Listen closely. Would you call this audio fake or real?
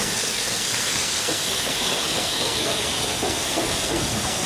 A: fake